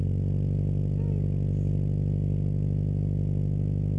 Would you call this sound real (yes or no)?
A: yes